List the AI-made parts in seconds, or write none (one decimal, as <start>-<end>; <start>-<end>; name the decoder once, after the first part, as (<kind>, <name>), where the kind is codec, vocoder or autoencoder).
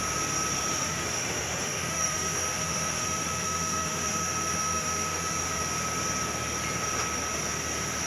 0.7-5.6 (autoencoder, DAC-VAE)